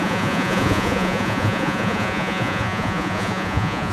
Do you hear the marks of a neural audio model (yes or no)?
yes